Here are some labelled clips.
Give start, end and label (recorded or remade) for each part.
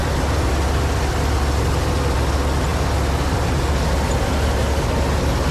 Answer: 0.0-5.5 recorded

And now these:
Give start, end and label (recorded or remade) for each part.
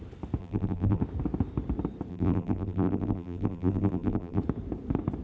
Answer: 0.0-0.4 recorded; 0.4-1.0 remade; 1.0-2.1 recorded; 2.1-4.4 remade; 4.4-5.2 recorded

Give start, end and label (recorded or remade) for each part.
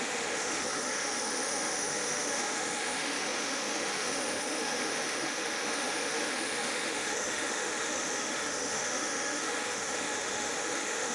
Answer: 0.0-11.1 remade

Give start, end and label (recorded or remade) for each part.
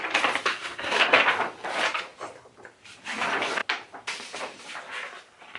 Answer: 0.0-0.5 recorded; 0.5-1.2 remade; 1.2-5.6 recorded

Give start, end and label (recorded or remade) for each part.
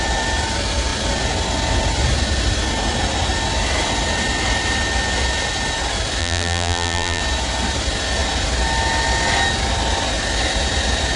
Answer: 0.0-6.2 recorded; 6.2-7.2 remade; 7.2-11.2 recorded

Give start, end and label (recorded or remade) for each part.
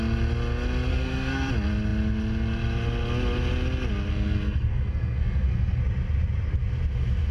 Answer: 0.0-0.9 recorded; 0.9-1.5 remade; 1.5-4.1 recorded; 4.1-5.8 remade; 5.8-7.3 recorded